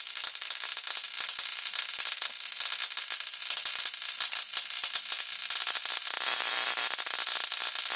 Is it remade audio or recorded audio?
recorded